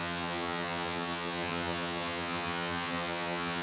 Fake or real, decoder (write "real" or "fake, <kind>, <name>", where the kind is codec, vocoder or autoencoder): fake, vocoder, HiFi-GAN